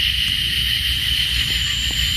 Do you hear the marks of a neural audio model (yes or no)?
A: no